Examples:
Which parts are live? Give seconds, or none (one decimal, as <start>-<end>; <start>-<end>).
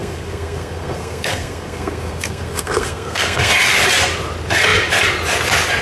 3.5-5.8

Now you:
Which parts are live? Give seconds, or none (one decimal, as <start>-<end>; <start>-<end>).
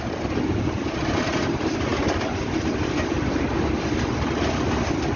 0.0-5.2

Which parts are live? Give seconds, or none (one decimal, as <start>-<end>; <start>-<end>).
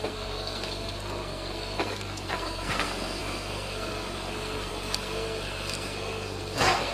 none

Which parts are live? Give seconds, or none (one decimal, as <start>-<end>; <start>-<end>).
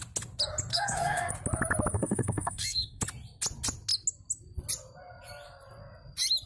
0.0-0.7; 1.3-1.9; 3.0-6.5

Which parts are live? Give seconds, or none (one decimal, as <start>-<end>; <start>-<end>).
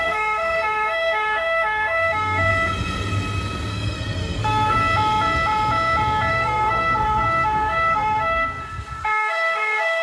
2.5-3.7; 4.8-6.3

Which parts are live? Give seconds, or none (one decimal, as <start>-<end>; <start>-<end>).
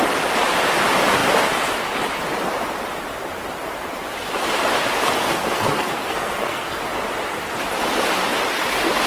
0.0-5.2; 6.8-9.1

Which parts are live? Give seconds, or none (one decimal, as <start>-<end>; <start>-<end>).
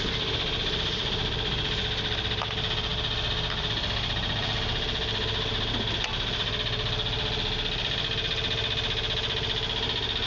0.0-10.3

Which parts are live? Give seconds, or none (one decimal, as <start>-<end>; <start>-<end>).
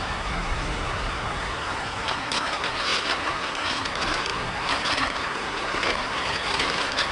none